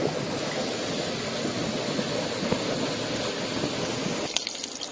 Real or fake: real